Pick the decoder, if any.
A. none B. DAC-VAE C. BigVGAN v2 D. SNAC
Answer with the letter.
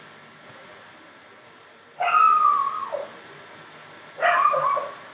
A